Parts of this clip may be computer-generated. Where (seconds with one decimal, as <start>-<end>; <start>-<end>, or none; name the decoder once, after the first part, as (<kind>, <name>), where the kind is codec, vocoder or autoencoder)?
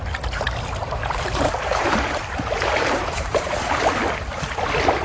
0.8-3.8 (vocoder, BigVGAN v2)